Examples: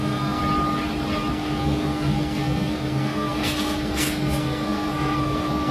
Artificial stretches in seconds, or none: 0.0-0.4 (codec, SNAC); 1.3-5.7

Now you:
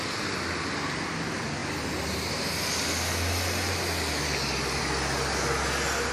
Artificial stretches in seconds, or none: none

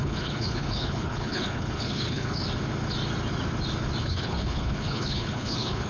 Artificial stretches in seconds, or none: 0.0-2.4 (codec, HILCodec); 4.0-5.9

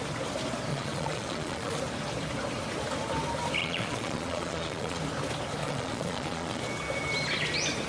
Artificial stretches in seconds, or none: 0.7-1.8 (vocoder, Vocos); 3.6-5.0; 5.6-6.6

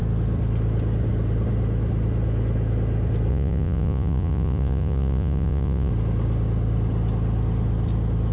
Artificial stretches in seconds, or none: 3.3-5.9 (vocoder, Vocos)

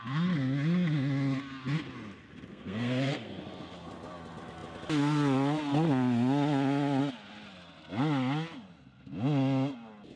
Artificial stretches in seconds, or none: 2.5-3.4 (codec, SNAC)

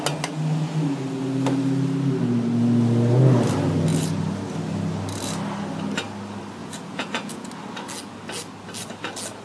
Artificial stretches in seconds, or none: 6.6-7.5 (vocoder, Vocos)

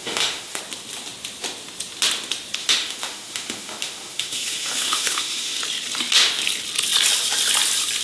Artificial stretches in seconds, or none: 0.0-0.6 (autoencoder, DAC-VAE); 2.6-5.6